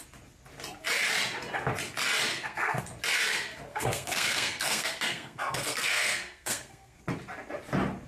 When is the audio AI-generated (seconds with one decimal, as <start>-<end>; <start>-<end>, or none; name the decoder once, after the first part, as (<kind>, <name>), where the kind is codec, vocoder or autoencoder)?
2.3-2.8 (codec, SNAC); 3.7-7.0